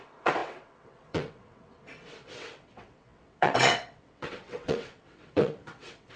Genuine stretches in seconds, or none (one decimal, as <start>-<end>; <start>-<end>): none